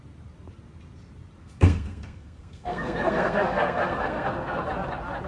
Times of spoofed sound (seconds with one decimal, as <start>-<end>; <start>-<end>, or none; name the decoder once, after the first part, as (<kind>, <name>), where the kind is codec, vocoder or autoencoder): 1.4-4.6 (codec, SNAC)